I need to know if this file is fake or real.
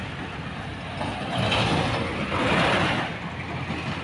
real